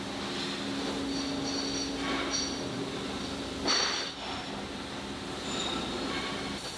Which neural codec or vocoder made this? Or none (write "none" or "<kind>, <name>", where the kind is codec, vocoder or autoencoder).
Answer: none